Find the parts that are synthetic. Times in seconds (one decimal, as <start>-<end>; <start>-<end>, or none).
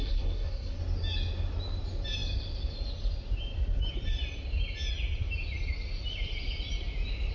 0.0-0.8